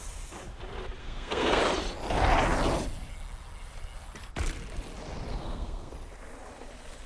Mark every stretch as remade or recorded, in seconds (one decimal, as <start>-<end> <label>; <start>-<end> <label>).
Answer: 0.0-1.0 recorded; 1.0-1.6 remade; 1.6-5.3 recorded; 5.3-5.9 remade; 5.9-7.1 recorded